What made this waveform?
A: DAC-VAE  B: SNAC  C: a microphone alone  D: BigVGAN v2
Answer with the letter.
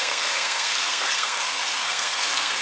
B